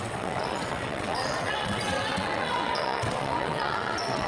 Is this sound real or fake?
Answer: fake